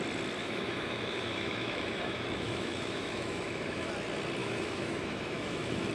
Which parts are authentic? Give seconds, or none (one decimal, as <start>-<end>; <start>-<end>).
0.0-0.4; 3.9-4.4